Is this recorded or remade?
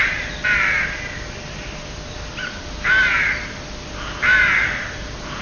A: recorded